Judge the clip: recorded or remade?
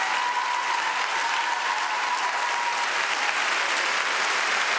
recorded